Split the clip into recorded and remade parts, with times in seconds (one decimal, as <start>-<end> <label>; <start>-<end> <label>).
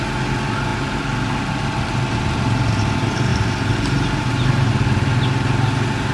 0.0-3.3 recorded; 3.3-4.7 remade; 4.7-6.1 recorded